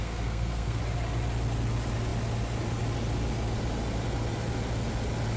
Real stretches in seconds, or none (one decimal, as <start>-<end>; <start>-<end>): 0.8-5.4